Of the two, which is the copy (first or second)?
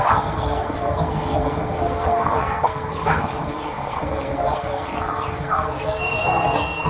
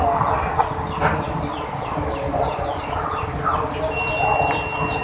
first